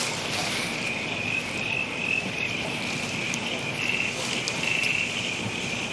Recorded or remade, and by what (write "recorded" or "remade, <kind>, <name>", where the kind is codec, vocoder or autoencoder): recorded